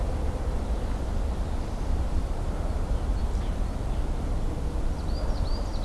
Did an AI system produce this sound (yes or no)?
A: no